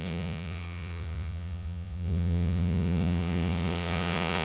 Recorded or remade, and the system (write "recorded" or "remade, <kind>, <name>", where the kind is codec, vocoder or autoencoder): remade, vocoder, Vocos